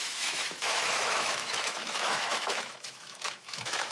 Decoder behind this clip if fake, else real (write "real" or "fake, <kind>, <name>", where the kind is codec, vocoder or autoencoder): fake, autoencoder, DAC-VAE